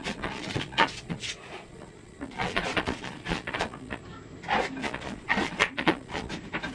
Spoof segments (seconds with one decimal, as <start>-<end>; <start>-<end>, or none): 0.0-4.0; 4.8-6.3